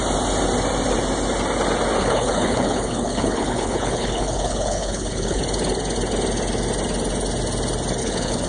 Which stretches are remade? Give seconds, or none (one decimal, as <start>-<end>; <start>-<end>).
2.0-5.4; 8.0-8.5

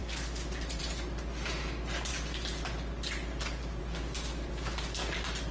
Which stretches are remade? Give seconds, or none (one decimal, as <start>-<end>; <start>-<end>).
none

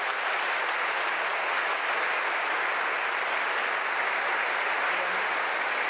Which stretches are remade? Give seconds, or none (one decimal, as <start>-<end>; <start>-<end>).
none

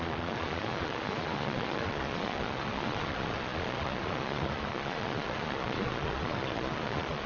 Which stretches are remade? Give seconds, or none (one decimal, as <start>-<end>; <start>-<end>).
0.0-7.3

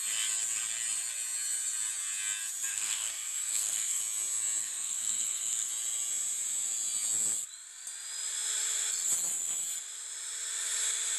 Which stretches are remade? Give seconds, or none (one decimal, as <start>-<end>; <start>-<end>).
2.7-4.0; 4.6-5.7

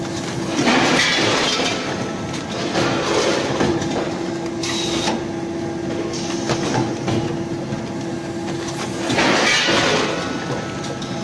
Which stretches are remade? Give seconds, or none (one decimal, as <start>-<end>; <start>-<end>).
none